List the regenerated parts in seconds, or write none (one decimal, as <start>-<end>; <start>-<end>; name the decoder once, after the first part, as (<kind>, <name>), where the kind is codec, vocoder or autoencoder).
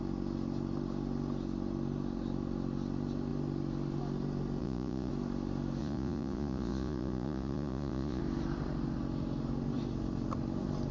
4.6-5.1 (vocoder, Vocos); 5.8-8.2